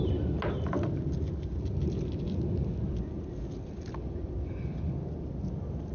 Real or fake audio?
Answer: real